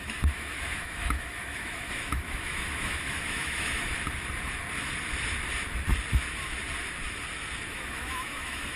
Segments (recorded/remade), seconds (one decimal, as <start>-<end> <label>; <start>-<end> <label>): 0.0-3.9 remade; 3.9-7.7 recorded; 7.7-8.8 remade